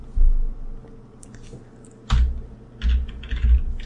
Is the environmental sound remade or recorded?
recorded